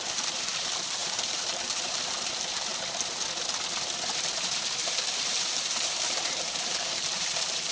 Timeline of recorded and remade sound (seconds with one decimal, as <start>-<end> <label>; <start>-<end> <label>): 0.0-2.7 remade; 2.7-4.8 recorded; 4.8-7.7 remade